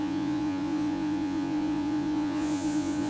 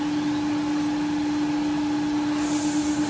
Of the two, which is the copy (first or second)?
first